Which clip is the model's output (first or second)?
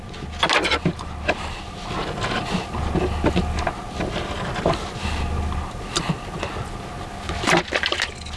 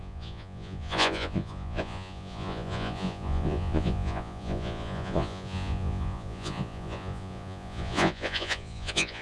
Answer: second